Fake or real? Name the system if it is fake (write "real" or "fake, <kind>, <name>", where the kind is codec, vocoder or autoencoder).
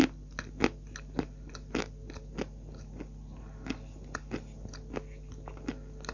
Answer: real